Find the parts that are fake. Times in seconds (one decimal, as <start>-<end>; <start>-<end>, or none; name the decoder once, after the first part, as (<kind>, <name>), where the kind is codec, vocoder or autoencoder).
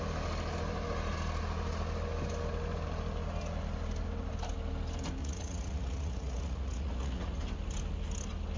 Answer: 5.2-7.4 (vocoder, Vocos)